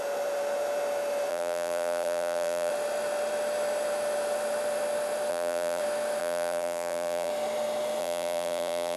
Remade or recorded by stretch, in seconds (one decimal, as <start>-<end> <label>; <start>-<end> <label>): 0.0-1.3 recorded; 1.3-2.7 remade; 2.7-5.3 recorded; 5.3-5.8 remade; 5.8-6.2 recorded; 6.2-7.3 remade; 7.3-8.0 recorded; 8.0-9.0 remade